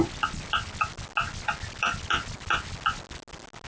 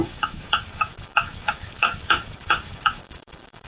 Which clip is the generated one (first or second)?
second